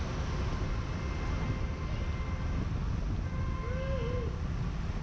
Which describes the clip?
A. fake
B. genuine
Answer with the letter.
B